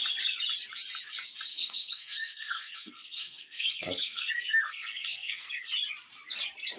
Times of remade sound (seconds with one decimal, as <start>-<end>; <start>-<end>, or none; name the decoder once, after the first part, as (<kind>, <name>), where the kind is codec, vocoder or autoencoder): 1.5-5.6 (codec, SNAC)